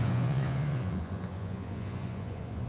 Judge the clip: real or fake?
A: fake